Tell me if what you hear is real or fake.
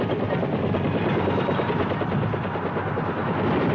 real